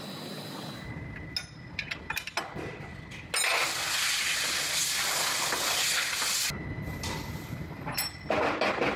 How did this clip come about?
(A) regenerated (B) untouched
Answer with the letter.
B